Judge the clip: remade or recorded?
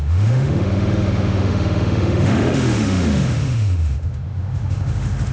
remade